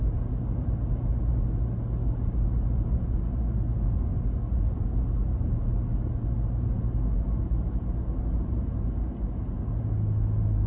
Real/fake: real